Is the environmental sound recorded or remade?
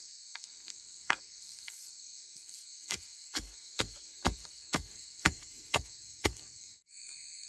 remade